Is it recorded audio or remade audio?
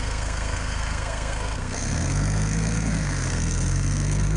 remade